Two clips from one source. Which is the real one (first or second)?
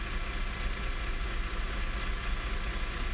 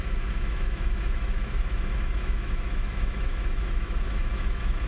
first